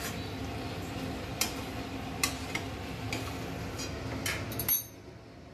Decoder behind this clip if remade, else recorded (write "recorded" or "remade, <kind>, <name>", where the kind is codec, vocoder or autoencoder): recorded